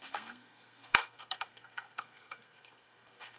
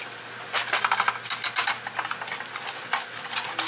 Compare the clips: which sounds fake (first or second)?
first